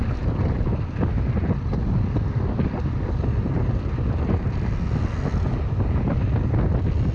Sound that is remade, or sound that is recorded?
recorded